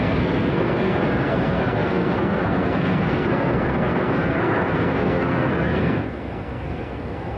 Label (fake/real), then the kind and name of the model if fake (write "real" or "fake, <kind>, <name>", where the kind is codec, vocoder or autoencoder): fake, codec, SNAC